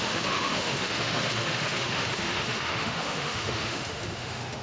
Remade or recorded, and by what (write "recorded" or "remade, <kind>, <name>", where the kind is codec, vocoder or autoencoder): remade, autoencoder, DAC-VAE